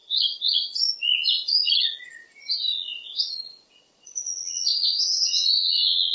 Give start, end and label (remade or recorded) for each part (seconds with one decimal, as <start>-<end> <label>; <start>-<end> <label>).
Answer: 0.0-6.1 remade